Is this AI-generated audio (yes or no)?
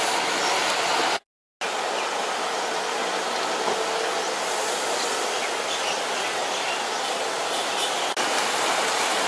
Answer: no